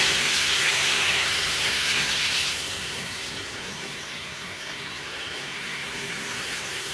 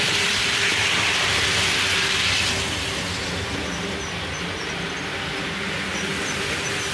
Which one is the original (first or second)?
second